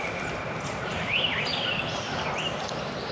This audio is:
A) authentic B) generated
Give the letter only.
A